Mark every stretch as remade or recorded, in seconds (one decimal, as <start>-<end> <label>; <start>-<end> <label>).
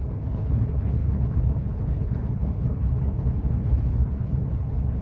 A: 0.0-5.0 remade